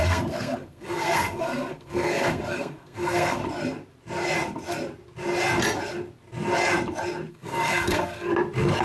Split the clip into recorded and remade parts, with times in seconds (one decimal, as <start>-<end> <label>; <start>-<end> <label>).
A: 0.0-3.4 remade; 3.4-7.3 recorded; 7.3-8.3 remade; 8.3-8.8 recorded

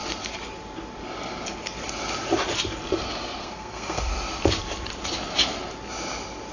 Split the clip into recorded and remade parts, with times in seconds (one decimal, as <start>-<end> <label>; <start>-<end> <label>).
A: 0.0-3.4 recorded; 3.4-4.1 remade; 4.1-6.5 recorded

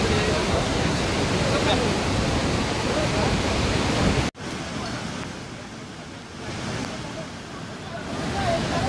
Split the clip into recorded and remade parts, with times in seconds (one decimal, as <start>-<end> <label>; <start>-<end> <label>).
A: 0.0-0.5 recorded; 0.5-1.0 remade; 1.0-8.9 recorded

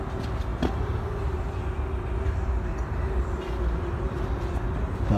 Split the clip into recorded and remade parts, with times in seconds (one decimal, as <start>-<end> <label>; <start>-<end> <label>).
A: 0.0-5.2 recorded

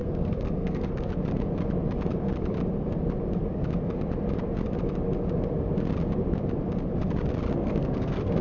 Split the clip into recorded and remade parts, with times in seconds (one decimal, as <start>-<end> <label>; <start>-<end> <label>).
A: 0.0-1.1 remade; 1.1-7.5 recorded; 7.5-8.4 remade

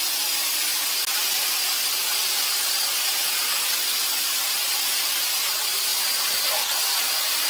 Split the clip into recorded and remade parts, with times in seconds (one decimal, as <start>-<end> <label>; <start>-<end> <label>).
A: 0.0-7.5 recorded

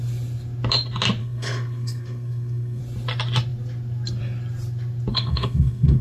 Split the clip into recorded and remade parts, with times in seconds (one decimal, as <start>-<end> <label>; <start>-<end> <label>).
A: 0.0-1.2 recorded; 1.2-2.8 remade; 2.8-5.1 recorded; 5.1-6.0 remade

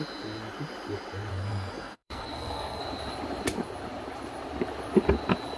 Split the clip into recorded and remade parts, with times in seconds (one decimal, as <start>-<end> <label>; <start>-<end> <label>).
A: 0.0-1.3 recorded; 1.3-2.8 remade; 2.8-5.6 recorded